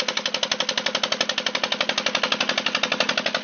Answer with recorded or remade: recorded